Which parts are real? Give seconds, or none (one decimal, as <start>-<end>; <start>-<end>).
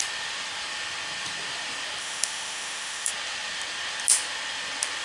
0.0-2.0; 3.1-5.0